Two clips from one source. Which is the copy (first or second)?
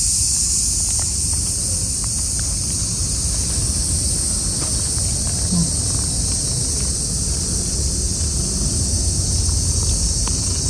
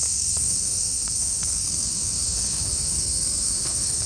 second